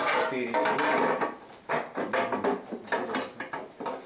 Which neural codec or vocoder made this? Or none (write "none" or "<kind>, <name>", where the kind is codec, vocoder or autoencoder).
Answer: none